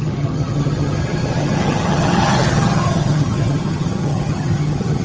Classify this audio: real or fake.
fake